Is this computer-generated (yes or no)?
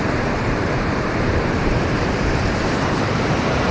yes